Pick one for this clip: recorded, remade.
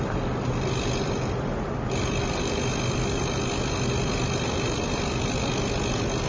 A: recorded